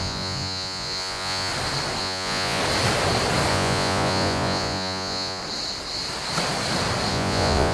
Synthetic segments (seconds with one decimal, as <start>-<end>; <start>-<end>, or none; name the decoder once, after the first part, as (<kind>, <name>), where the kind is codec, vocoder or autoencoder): 0.0-1.5 (vocoder, Vocos); 2.0-2.6; 3.5-5.4; 7.1-7.7